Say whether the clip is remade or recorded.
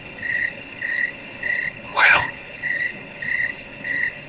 remade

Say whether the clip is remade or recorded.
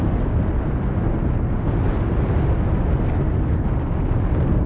recorded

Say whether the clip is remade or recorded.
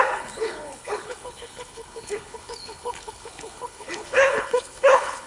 remade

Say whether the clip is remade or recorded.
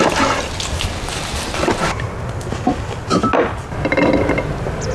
recorded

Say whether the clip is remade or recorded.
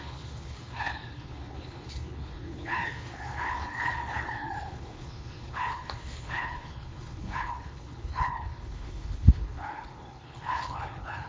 remade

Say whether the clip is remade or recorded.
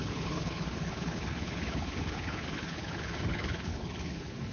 remade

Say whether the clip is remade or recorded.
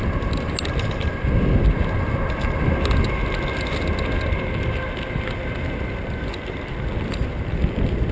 recorded